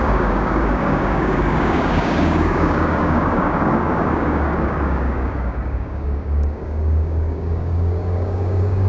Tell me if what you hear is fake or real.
fake